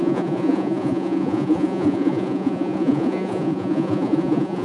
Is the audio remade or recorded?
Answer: remade